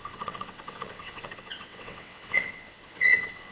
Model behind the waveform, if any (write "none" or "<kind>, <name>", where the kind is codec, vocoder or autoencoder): vocoder, WaveNeXt